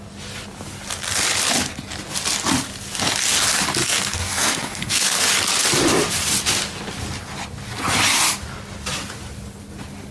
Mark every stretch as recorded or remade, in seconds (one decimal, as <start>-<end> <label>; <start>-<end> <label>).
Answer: 0.0-3.8 recorded; 3.8-5.3 remade; 5.3-10.1 recorded